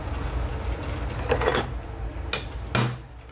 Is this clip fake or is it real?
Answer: real